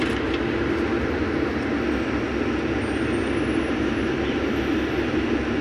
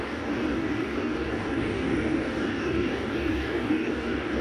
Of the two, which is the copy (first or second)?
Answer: second